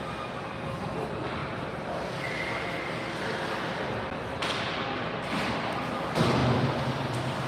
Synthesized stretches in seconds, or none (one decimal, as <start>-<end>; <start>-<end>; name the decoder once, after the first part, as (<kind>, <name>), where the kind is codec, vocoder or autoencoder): 1.4-2.1 (vocoder, BigVGAN v2)